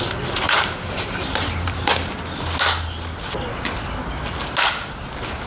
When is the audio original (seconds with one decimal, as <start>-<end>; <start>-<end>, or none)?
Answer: 1.9-5.5